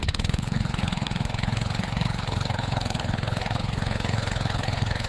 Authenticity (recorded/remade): remade